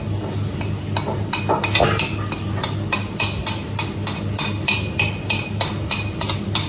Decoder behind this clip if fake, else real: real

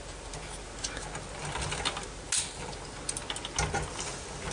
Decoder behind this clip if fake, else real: real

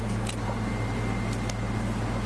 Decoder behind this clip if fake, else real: real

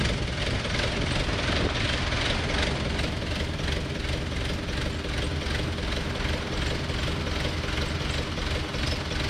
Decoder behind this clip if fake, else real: real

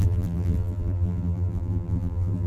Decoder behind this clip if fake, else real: fake, vocoder, BigVGAN v2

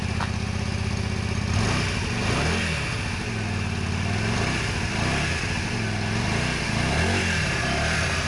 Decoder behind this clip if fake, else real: real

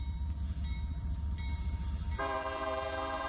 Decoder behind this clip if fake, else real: fake, vocoder, BigVGAN v2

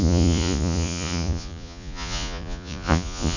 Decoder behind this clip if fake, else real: fake, vocoder, Vocos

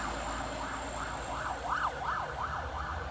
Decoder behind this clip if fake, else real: real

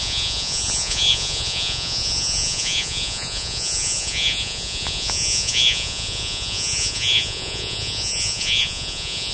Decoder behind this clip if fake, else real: fake, vocoder, Vocos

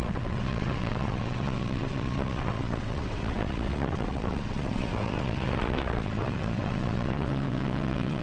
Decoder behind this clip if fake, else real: fake, vocoder, WaveNeXt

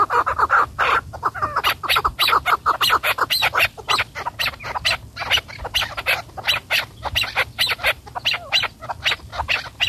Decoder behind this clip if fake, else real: fake, vocoder, BigVGAN v2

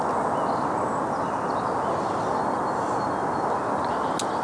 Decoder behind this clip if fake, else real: real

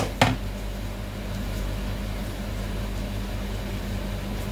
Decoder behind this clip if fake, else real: real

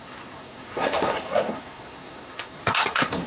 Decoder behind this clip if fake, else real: fake, codec, SNAC